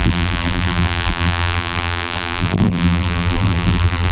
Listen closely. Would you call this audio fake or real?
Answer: fake